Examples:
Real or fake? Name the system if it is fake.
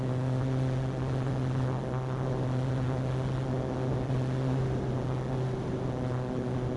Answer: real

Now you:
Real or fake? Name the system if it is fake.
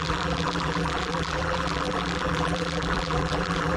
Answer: fake, vocoder, BigVGAN v2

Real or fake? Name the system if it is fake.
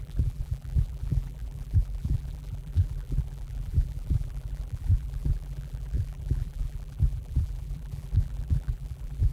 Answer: fake, vocoder, BigVGAN v2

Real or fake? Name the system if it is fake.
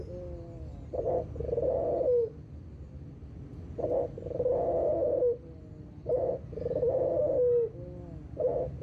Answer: real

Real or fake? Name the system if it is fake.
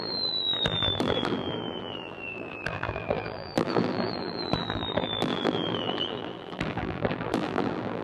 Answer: fake, vocoder, BigVGAN v2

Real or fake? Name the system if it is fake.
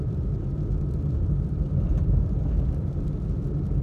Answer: fake, vocoder, BigVGAN v2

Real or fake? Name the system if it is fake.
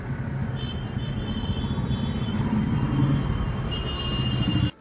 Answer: real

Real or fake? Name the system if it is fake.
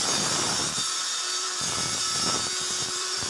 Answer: fake, vocoder, BigVGAN v2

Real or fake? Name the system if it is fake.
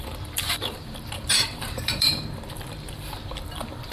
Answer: fake, vocoder, BigVGAN v2